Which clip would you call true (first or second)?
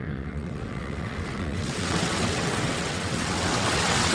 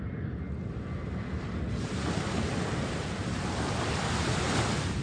second